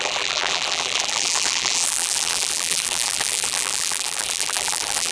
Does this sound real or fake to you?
fake